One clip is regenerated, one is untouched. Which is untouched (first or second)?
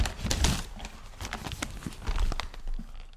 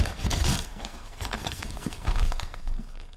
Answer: first